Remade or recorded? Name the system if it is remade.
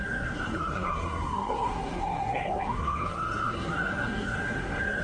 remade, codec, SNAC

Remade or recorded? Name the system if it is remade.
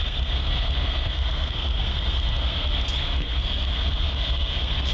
remade, codec, SNAC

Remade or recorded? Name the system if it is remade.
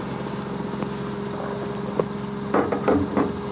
recorded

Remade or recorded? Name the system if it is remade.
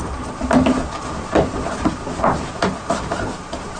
recorded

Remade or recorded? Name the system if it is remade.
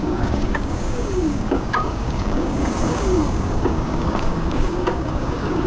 remade, codec, DAC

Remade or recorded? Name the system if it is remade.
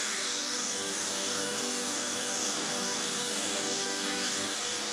remade, codec, DAC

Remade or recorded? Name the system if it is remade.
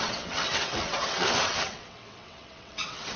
remade, vocoder, WaveNeXt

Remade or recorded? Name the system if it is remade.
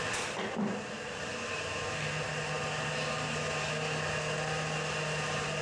recorded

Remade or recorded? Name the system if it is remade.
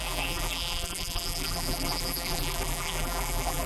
remade, vocoder, BigVGAN v2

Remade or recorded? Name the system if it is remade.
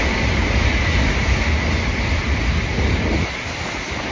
recorded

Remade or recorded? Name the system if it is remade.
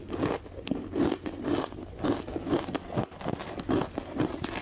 recorded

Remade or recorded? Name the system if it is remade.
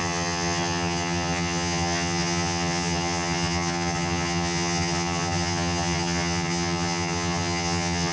remade, vocoder, HiFi-GAN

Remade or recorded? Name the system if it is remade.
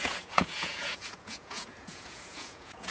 remade, vocoder, Vocos